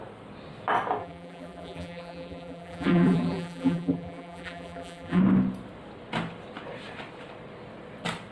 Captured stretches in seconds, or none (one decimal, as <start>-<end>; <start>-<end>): 0.0-1.0; 5.2-8.3